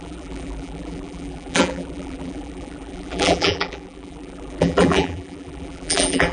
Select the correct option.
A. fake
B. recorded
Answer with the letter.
A